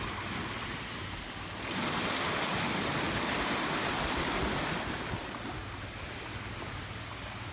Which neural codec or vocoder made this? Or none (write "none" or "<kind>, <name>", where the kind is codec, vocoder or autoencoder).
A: none